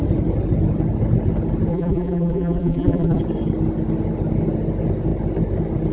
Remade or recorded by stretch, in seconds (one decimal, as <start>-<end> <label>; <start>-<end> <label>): 0.0-1.7 recorded; 1.7-3.2 remade; 3.2-5.9 recorded